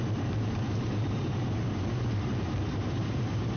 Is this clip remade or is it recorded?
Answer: remade